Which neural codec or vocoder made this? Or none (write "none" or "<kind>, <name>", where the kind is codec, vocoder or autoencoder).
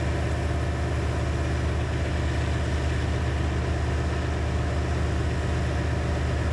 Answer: none